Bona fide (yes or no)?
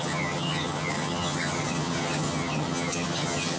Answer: no